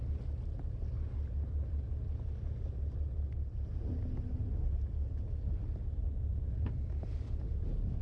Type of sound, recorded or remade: recorded